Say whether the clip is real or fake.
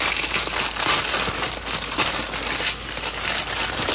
real